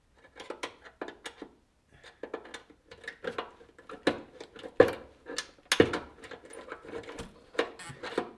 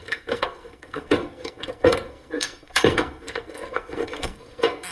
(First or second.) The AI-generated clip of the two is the second